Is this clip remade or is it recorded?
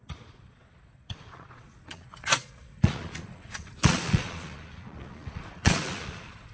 remade